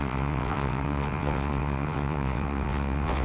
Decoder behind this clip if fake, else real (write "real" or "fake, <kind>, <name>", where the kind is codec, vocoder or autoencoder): fake, vocoder, WaveNeXt